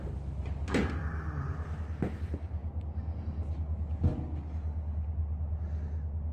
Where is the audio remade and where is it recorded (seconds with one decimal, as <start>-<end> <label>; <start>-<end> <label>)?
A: 0.0-5.2 recorded; 5.2-6.3 remade

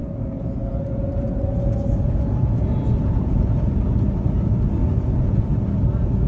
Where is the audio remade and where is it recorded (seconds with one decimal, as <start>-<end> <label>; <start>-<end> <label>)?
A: 0.0-3.8 remade; 3.8-4.8 recorded; 4.8-5.4 remade; 5.4-6.3 recorded